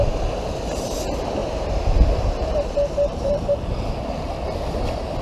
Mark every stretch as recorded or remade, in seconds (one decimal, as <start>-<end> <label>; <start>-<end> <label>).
0.0-1.4 recorded; 1.4-3.8 remade; 3.8-5.2 recorded